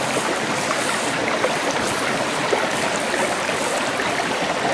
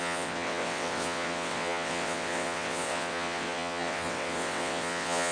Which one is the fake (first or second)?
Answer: second